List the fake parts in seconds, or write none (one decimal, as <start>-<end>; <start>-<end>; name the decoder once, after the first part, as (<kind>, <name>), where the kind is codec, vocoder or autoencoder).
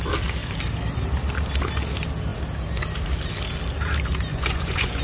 4.3-5.0 (vocoder, Vocos)